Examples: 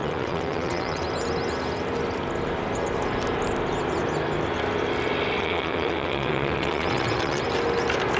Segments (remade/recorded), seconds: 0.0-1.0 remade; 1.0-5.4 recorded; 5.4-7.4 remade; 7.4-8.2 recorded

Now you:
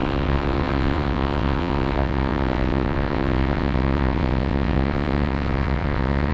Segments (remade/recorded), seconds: 0.0-6.3 remade